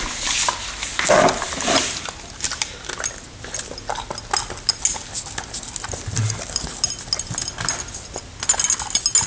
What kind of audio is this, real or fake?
real